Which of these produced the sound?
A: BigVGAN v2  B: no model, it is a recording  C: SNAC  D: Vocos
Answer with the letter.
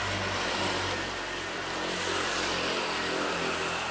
B